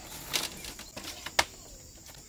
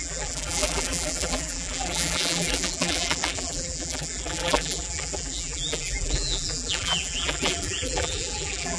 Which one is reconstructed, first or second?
second